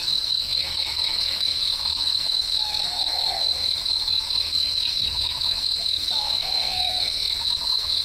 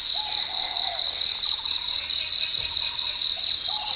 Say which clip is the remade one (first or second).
first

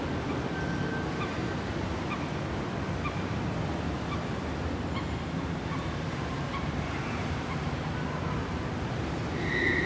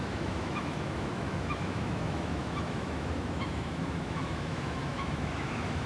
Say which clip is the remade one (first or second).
second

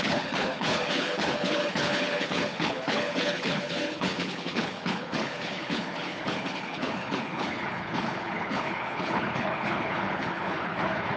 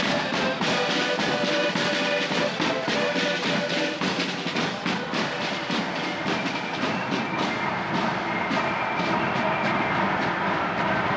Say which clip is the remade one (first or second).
first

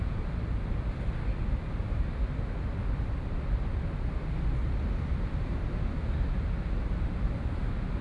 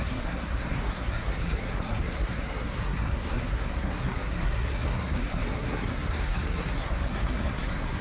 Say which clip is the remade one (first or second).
second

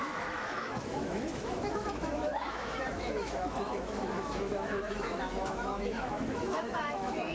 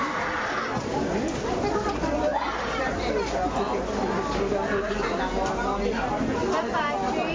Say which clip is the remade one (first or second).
first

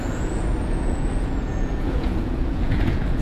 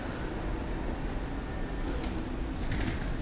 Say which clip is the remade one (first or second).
first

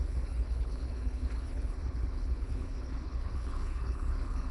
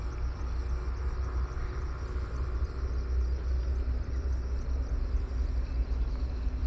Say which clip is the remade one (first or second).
first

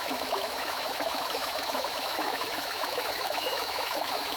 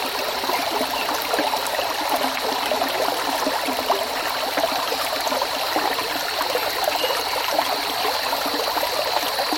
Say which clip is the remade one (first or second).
first